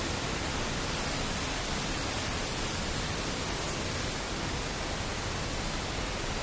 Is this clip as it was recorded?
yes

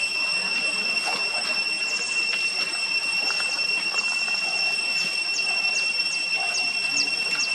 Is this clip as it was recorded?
yes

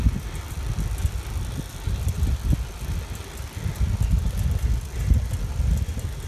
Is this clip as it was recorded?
yes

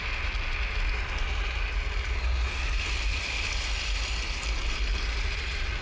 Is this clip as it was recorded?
yes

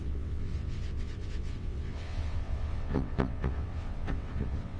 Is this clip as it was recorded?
no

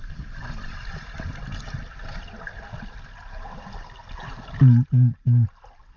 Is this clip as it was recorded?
yes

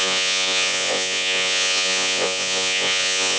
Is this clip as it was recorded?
no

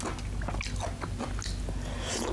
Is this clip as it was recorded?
yes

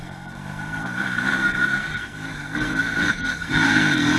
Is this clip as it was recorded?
no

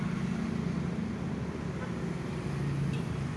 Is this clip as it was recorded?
yes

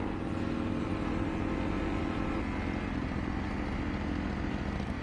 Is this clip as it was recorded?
yes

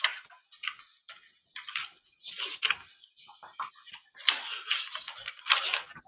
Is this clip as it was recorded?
yes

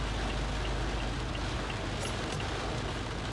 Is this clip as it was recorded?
yes